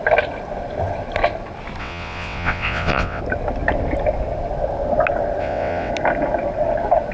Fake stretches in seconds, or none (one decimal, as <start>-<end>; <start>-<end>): 1.8-3.2; 5.4-5.9